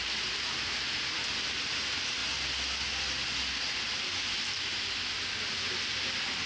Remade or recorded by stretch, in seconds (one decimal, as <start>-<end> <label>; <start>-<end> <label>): 0.0-6.5 recorded